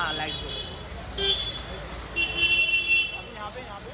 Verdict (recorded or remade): recorded